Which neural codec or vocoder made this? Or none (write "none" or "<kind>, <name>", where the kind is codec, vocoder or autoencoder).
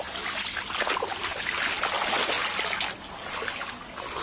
none